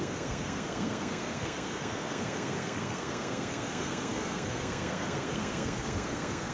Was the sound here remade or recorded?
remade